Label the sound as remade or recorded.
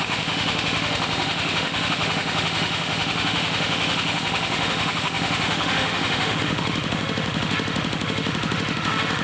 remade